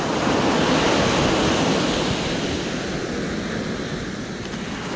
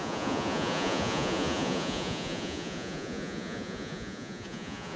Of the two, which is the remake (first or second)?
second